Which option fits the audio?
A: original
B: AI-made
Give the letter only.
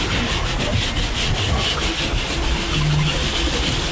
A